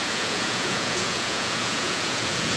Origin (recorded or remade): remade